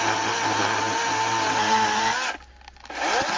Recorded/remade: recorded